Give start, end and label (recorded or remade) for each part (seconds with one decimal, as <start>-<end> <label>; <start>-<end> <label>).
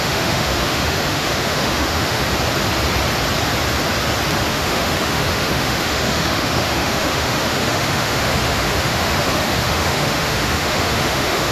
0.0-2.2 remade; 2.2-4.5 recorded; 4.5-11.5 remade